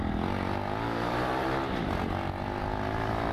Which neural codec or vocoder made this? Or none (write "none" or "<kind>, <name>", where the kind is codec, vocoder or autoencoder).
none